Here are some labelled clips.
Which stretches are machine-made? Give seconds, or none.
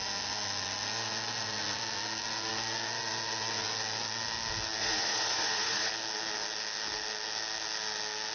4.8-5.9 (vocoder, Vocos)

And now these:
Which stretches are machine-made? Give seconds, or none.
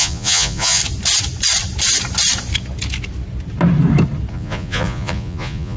0.0-0.8 (vocoder, Vocos); 4.3-5.8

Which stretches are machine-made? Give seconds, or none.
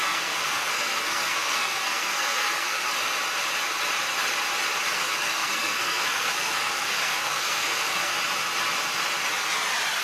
0.0-2.9 (codec, SNAC); 4.9-8.1